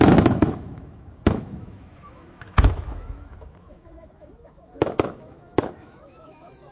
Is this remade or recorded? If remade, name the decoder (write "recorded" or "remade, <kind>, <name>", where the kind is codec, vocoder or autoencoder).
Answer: remade, autoencoder, DAC-VAE